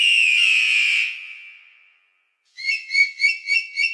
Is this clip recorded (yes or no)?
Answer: no